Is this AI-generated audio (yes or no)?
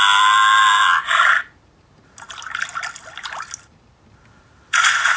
no